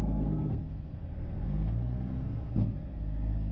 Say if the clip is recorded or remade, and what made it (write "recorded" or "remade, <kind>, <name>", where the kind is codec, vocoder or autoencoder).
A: remade, codec, SNAC